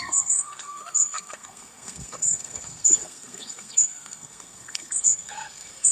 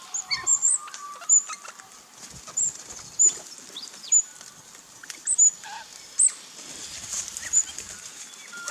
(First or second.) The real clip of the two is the second